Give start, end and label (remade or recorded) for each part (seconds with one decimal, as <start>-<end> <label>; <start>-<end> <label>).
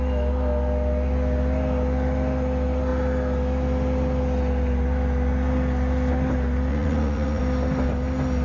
0.0-6.7 recorded; 6.7-7.4 remade; 7.4-8.4 recorded